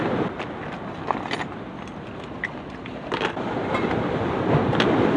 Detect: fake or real real